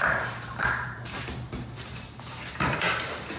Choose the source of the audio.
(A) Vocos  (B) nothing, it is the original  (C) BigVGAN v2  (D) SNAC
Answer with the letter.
C